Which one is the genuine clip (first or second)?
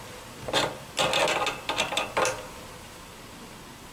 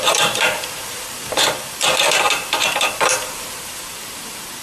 first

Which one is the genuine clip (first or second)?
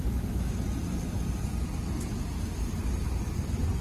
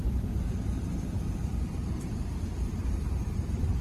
first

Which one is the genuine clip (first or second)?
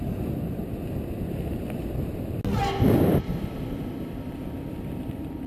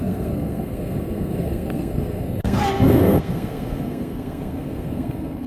first